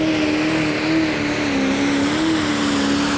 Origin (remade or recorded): recorded